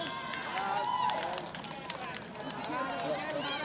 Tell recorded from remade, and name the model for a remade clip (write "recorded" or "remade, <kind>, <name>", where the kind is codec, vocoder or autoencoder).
recorded